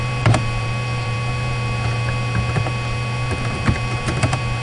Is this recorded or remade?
remade